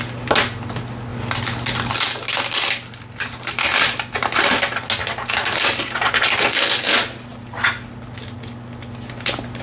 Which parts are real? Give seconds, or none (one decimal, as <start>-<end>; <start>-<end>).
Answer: 0.0-9.6